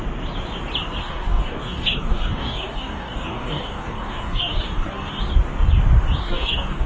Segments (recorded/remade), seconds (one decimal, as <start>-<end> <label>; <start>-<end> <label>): 0.0-1.0 recorded; 1.0-5.1 remade; 5.1-6.2 recorded; 6.2-6.9 remade